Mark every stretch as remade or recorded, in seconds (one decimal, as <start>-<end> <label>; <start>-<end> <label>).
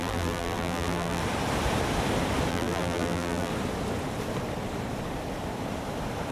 0.0-1.2 remade; 1.2-2.5 recorded; 2.5-3.5 remade; 3.5-6.3 recorded